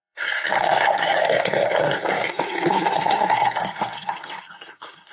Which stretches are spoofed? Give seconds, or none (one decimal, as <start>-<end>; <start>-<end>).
0.0-5.1